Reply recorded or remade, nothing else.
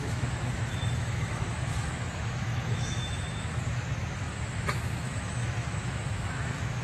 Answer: remade